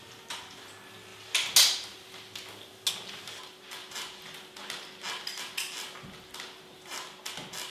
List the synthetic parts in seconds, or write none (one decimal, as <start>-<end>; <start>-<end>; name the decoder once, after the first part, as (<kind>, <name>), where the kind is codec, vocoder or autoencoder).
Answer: none